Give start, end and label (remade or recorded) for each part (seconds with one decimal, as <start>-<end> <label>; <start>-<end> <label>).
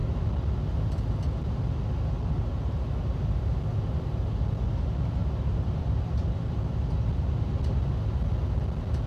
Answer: 0.0-5.2 recorded; 5.2-7.8 remade; 7.8-9.1 recorded